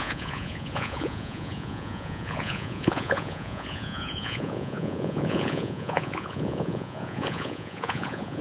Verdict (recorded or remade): remade